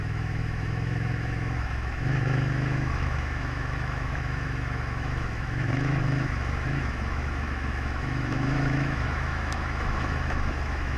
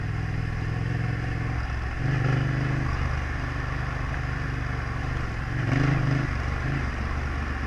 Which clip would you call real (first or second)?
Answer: second